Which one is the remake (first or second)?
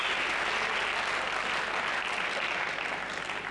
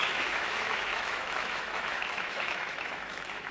second